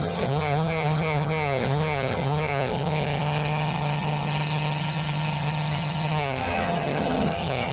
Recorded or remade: remade